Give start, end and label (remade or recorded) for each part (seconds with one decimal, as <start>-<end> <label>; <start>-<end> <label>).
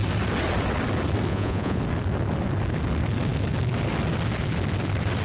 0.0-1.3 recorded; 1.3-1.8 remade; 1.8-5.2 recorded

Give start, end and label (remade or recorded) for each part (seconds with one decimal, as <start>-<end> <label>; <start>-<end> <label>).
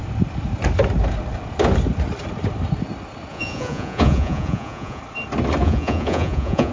0.0-3.3 recorded; 3.3-5.0 remade; 5.0-5.6 recorded; 5.6-6.7 remade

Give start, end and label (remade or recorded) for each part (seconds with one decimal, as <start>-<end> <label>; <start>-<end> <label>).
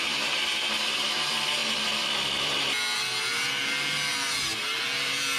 0.0-5.4 remade